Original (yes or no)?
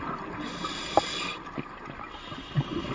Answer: yes